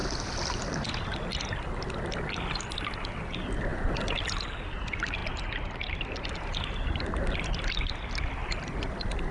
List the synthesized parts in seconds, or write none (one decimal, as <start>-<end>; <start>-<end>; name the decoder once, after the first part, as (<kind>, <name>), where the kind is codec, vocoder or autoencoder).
none